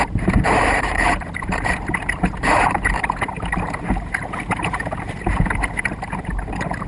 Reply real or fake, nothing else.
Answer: fake